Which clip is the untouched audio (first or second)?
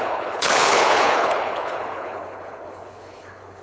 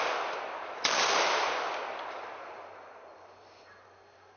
second